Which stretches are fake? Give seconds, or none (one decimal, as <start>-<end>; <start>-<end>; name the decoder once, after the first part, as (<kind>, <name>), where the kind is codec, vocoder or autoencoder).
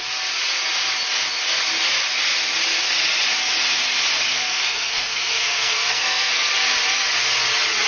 4.3-6.5 (codec, SNAC)